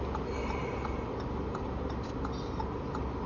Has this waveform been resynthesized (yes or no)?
no